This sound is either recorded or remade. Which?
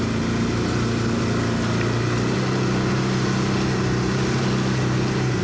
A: recorded